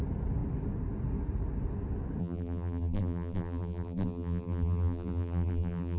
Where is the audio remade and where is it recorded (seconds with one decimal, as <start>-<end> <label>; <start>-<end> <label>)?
0.0-2.2 recorded; 2.2-6.0 remade

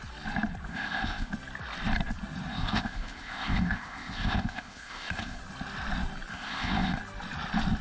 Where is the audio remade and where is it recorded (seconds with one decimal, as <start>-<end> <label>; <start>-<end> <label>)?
0.0-0.7 recorded; 0.7-1.3 remade; 1.3-2.5 recorded; 2.5-5.4 remade; 5.4-6.3 recorded; 6.3-7.0 remade; 7.0-7.8 recorded

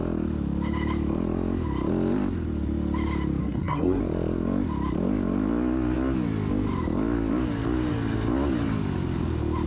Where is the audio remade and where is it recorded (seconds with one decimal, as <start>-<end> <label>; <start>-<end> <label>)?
0.0-3.4 recorded; 3.4-4.0 remade; 4.0-9.7 recorded